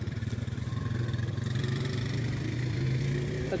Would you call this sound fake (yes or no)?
yes